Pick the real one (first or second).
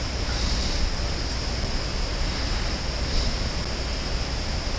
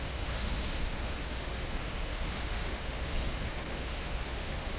first